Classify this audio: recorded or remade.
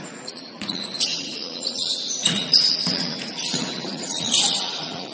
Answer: remade